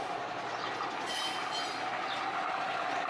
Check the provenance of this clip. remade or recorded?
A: recorded